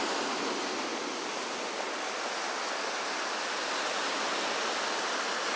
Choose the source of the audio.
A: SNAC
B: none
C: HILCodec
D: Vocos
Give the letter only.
B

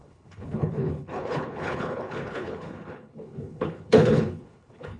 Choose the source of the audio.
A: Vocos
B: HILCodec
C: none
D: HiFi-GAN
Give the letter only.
B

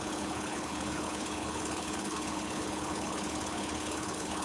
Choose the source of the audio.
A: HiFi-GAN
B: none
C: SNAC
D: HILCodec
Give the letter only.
D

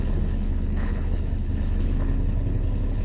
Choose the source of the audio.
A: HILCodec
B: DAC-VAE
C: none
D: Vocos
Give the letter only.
A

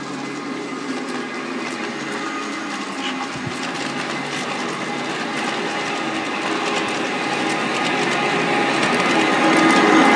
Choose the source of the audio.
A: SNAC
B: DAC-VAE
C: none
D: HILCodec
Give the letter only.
C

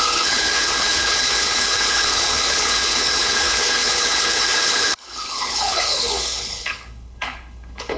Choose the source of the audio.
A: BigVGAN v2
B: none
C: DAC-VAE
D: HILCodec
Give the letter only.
D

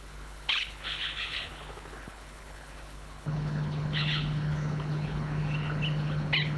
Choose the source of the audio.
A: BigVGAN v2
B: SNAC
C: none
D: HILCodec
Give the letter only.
D